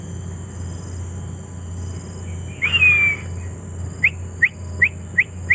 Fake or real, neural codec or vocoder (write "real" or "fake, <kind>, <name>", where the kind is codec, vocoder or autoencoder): real